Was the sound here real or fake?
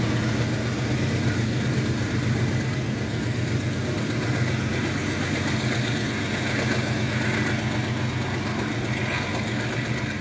real